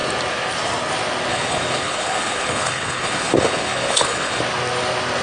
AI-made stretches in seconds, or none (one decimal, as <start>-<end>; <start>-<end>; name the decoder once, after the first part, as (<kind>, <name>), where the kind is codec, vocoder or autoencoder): 1.3-4.4 (codec, HILCodec)